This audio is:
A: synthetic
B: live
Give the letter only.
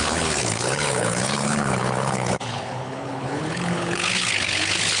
A